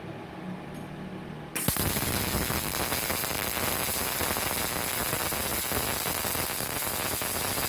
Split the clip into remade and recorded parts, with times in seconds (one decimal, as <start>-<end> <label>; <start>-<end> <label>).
0.0-7.7 recorded